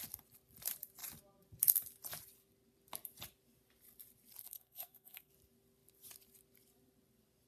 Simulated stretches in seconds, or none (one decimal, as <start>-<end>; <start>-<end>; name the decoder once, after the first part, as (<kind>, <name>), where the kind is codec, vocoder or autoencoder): 4.4-5.3 (codec, SNAC)